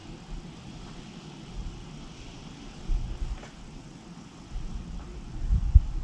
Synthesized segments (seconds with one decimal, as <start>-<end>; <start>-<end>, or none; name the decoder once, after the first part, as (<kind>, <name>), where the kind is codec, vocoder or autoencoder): none